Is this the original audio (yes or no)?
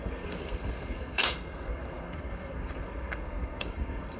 no